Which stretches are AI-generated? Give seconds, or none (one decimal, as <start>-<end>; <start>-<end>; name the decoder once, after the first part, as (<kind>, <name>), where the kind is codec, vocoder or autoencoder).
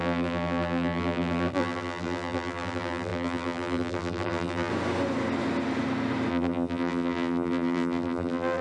0.0-4.7 (vocoder, BigVGAN v2); 6.3-8.6